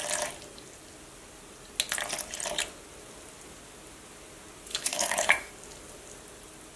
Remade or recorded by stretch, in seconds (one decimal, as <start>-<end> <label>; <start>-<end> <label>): 0.0-4.7 recorded; 4.7-5.5 remade; 5.5-6.8 recorded